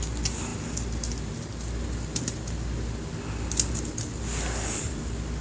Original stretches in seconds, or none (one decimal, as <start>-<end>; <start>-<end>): 0.0-5.4